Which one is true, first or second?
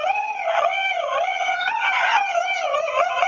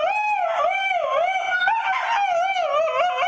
second